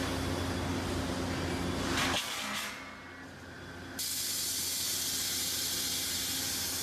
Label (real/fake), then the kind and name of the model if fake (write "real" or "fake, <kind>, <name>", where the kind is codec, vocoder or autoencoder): real